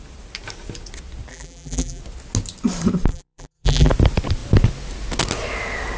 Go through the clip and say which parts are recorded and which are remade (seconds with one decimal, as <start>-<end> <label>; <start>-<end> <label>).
0.0-1.3 recorded; 1.3-2.0 remade; 2.0-3.1 recorded; 3.1-3.9 remade; 3.9-6.0 recorded